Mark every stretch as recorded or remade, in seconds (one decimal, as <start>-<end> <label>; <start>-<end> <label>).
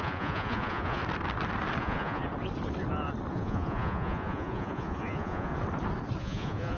0.0-1.0 remade; 1.0-1.8 recorded; 1.8-2.2 remade; 2.2-3.3 recorded; 3.3-5.5 remade; 5.5-6.2 recorded; 6.2-6.8 remade